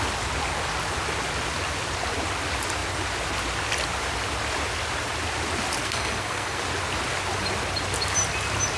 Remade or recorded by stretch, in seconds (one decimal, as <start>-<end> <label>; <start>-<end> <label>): 0.0-5.8 recorded; 5.8-6.6 remade; 6.6-8.8 recorded